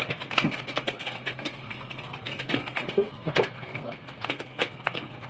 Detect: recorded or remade remade